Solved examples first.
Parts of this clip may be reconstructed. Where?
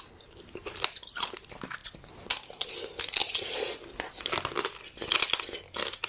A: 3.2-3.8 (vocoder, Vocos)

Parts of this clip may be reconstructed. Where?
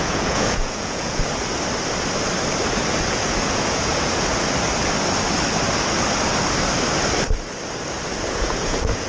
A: 0.0-1.2 (vocoder, Vocos); 3.0-4.3; 8.2-9.1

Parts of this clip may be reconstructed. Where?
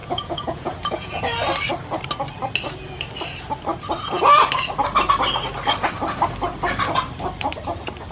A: 0.0-1.2 (vocoder, Vocos)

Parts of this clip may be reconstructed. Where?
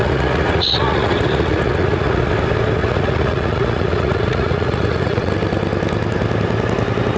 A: 0.0-2.3 (vocoder, Vocos); 2.8-5.3